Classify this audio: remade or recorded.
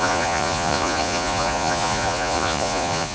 remade